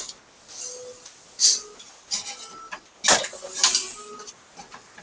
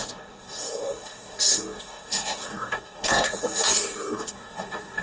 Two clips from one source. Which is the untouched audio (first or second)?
first